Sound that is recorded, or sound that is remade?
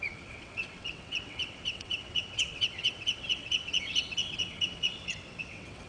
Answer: remade